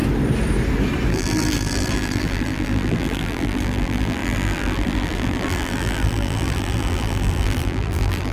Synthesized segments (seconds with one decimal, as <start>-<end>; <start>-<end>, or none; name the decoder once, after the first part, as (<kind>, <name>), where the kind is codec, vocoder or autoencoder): 1.1-8.3 (vocoder, BigVGAN v2)